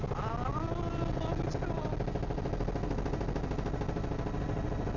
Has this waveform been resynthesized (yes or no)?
no